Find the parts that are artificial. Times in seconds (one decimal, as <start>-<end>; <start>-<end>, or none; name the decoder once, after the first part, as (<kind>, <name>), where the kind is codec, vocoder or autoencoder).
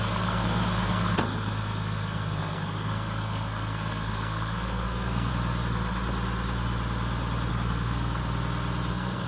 0.0-5.3 (codec, SNAC); 7.5-8.2; 8.9-9.3